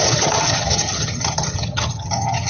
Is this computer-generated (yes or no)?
yes